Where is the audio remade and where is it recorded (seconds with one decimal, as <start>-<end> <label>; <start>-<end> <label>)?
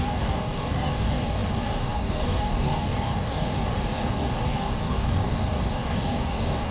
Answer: 0.0-6.7 remade